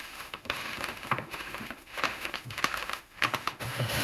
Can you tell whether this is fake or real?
fake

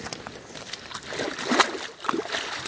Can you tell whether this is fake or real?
real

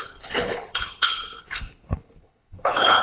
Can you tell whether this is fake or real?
fake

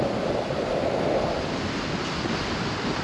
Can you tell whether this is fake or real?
real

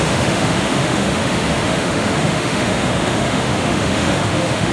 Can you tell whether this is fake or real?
fake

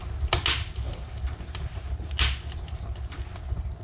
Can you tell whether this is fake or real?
real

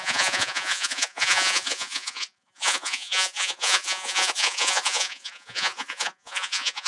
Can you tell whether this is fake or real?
fake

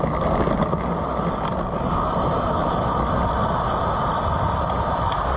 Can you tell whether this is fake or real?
real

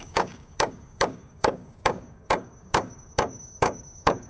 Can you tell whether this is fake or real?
fake